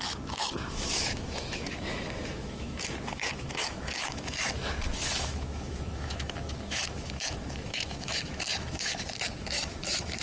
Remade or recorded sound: remade